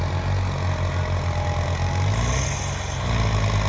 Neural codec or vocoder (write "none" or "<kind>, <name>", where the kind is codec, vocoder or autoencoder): none